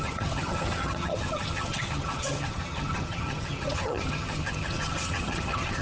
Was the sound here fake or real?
fake